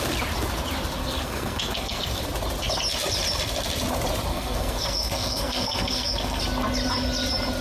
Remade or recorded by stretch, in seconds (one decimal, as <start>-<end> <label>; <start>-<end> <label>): 0.0-1.0 recorded; 1.0-2.2 remade; 2.2-4.3 recorded; 4.3-6.4 remade; 6.4-7.6 recorded

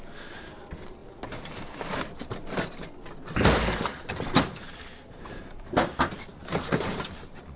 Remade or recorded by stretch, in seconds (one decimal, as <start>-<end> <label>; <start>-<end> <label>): 0.0-7.6 recorded

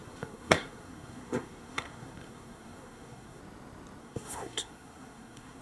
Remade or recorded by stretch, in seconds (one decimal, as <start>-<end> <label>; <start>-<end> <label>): 0.0-3.4 remade; 3.4-4.0 recorded; 4.0-5.6 remade

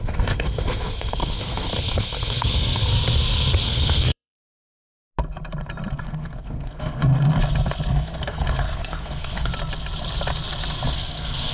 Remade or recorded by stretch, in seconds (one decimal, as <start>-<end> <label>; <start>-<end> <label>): 0.0-2.9 remade; 2.9-3.6 recorded; 3.6-4.9 remade; 4.9-6.0 recorded; 6.0-7.1 remade; 7.1-7.9 recorded; 7.9-9.5 remade; 9.5-10.9 recorded; 10.9-11.5 remade